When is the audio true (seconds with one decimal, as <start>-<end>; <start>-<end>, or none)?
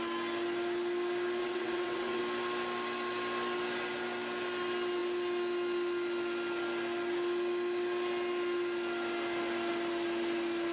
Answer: 0.0-1.4; 2.2-10.7